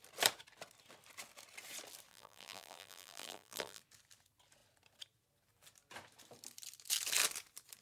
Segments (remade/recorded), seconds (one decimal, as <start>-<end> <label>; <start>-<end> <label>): 0.0-2.1 recorded; 2.1-3.8 remade; 3.8-7.8 recorded